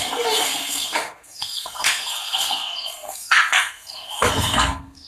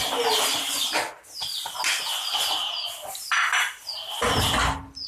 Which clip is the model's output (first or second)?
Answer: first